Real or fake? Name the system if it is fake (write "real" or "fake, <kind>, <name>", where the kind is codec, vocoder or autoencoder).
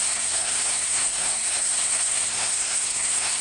fake, codec, SNAC